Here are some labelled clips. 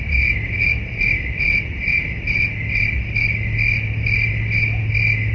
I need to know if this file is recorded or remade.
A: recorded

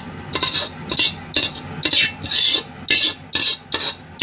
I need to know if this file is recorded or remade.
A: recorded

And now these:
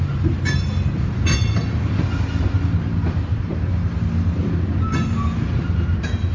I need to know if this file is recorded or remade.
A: recorded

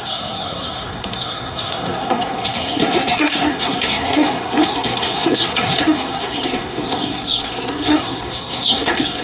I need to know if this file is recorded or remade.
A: remade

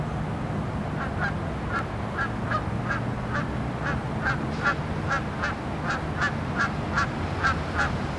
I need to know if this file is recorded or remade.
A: recorded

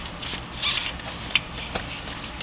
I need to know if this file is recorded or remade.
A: recorded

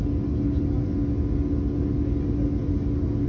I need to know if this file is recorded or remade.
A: recorded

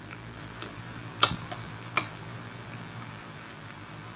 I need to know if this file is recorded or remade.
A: remade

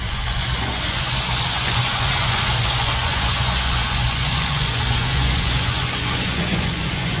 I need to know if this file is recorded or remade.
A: remade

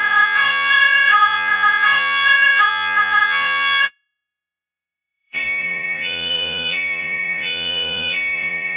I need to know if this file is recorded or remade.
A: remade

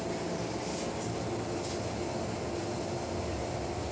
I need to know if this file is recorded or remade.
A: recorded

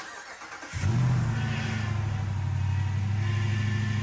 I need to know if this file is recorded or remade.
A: recorded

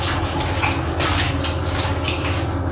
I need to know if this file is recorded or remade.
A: recorded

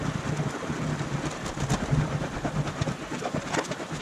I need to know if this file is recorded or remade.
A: recorded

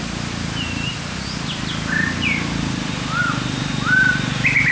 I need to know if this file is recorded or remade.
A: recorded